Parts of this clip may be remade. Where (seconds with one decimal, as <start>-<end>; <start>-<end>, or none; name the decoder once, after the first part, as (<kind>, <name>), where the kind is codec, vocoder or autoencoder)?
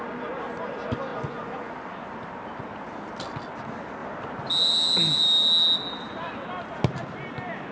1.1-1.7 (vocoder, Vocos)